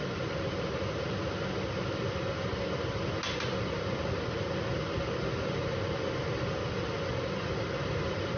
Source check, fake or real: real